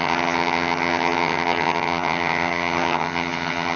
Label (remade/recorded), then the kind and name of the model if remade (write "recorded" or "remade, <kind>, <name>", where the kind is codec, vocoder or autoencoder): remade, vocoder, HiFi-GAN